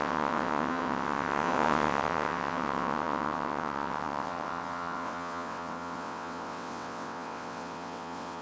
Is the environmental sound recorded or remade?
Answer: remade